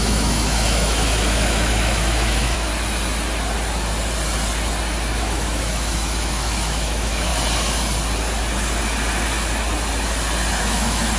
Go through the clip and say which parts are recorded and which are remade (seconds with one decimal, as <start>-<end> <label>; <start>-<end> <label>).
0.0-2.7 remade; 2.7-5.2 recorded; 5.2-7.3 remade; 7.3-10.6 recorded; 10.6-11.2 remade